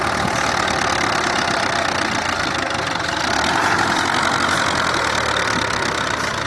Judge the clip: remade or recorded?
recorded